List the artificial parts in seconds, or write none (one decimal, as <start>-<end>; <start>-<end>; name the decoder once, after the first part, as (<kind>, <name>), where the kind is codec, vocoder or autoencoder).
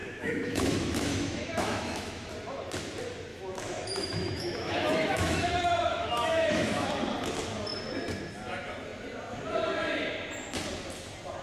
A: 0.0-2.3 (autoencoder, DAC-VAE); 3.3-6.9